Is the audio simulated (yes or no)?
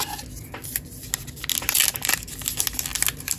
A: no